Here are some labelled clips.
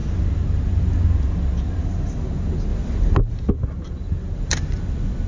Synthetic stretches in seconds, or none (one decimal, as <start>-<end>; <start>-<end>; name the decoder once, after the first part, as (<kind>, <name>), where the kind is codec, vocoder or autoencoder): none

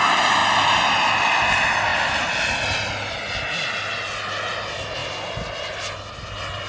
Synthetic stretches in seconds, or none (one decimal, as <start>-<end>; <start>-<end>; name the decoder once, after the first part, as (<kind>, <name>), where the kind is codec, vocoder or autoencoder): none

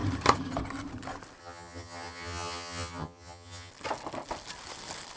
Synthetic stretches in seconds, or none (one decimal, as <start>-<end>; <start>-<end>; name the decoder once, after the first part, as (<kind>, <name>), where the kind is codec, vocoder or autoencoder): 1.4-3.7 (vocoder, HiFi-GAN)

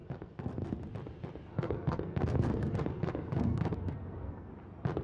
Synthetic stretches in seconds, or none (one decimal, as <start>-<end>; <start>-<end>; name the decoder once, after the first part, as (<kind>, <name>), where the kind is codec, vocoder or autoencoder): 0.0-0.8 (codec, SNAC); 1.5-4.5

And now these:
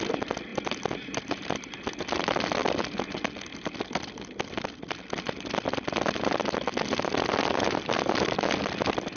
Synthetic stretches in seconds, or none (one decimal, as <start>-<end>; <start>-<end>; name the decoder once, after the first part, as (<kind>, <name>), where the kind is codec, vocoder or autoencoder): none

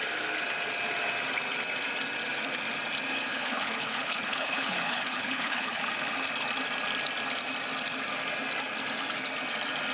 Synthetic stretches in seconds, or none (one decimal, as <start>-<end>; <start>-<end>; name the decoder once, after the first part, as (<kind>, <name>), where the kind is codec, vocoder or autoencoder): 3.3-5.8 (codec, HILCodec)